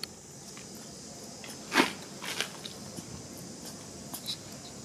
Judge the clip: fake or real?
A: real